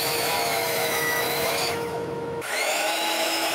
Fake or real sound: fake